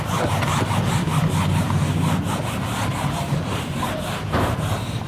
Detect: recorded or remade recorded